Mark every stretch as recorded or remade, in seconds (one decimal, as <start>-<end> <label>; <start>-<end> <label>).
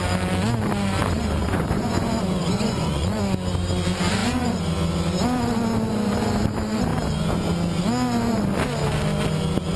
0.0-1.4 recorded; 1.4-3.2 remade; 3.2-9.8 recorded